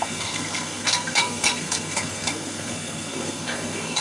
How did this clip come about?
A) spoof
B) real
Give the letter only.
A